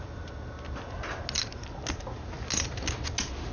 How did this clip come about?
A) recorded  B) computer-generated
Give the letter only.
A